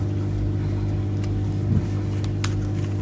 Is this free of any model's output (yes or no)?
yes